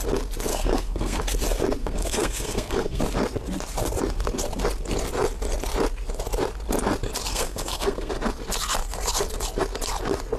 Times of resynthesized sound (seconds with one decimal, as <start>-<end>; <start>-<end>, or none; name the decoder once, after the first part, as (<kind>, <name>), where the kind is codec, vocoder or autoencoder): 0.5-1.2 (codec, SNAC); 1.8-3.0; 7.3-8.1